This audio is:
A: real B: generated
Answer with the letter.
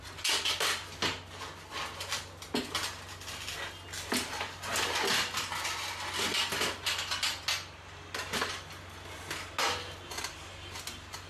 A